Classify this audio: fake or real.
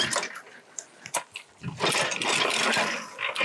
real